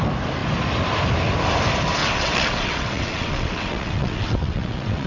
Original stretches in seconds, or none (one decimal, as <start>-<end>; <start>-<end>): 0.0-2.0